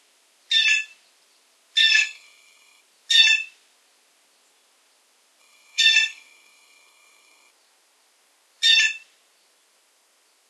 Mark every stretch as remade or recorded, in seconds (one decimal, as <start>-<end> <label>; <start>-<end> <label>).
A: 0.0-1.8 recorded; 1.8-2.8 remade; 2.8-5.4 recorded; 5.4-7.5 remade; 7.5-10.5 recorded